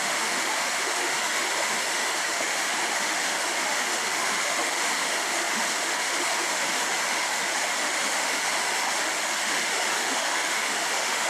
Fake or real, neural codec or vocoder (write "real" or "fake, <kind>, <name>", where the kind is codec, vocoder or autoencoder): fake, autoencoder, DAC-VAE